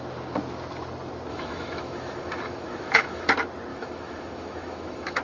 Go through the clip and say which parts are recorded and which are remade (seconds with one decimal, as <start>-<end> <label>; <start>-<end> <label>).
0.0-1.3 recorded; 1.3-3.3 remade; 3.3-3.7 recorded; 3.7-5.2 remade